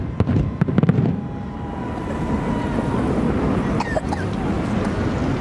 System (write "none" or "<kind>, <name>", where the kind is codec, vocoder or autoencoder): none